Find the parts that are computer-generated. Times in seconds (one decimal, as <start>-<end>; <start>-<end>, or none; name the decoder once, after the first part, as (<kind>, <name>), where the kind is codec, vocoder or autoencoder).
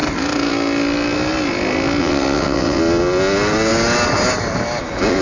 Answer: 2.0-2.8 (vocoder, WaveNeXt)